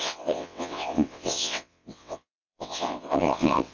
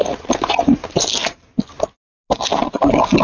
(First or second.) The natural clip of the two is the second